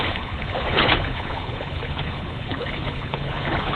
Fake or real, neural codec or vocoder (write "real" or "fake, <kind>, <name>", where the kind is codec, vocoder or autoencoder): fake, codec, HILCodec